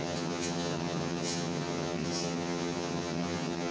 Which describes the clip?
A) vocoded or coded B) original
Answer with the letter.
A